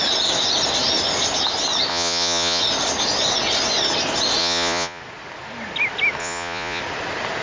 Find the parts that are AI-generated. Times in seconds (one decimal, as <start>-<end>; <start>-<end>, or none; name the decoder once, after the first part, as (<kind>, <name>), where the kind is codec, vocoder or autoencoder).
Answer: 1.9-2.6 (vocoder, Vocos); 4.4-5.0; 6.2-6.8